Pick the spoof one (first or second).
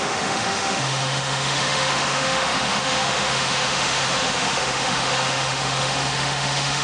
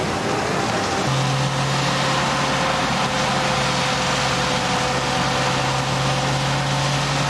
first